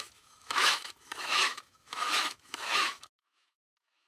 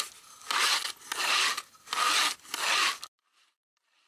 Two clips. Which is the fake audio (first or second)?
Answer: first